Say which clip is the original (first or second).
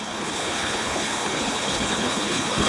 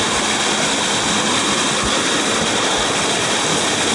second